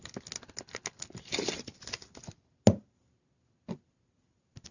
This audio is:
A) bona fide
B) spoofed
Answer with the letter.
A